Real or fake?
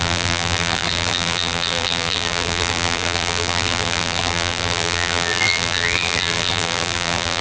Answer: fake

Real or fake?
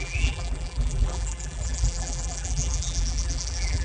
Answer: fake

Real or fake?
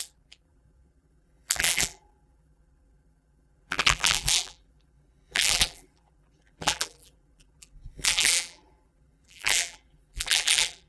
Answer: fake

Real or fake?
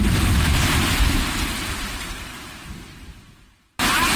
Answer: fake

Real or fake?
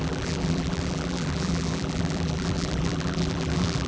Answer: fake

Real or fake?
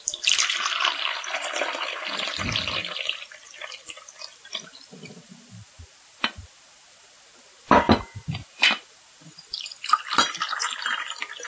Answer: fake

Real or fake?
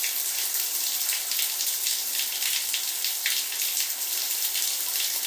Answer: real